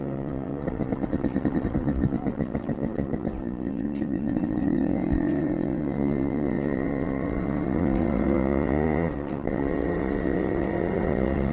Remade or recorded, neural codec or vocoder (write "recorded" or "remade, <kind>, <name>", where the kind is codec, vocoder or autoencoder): remade, vocoder, WaveNeXt